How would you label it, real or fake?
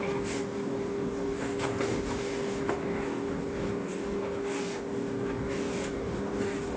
fake